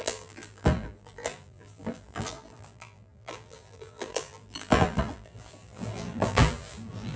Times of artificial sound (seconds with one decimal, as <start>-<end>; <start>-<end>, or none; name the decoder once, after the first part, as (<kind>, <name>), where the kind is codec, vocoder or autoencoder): 0.0-7.2 (vocoder, BigVGAN v2)